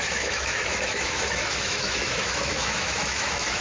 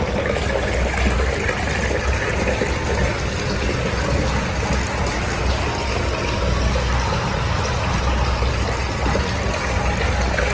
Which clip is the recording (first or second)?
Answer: second